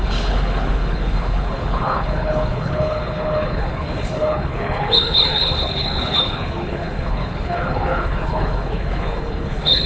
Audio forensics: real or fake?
fake